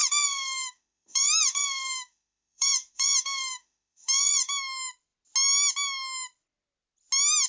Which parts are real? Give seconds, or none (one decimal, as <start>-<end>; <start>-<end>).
4.5-7.5